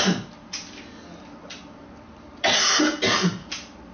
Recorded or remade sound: recorded